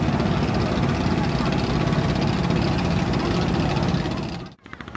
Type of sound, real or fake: real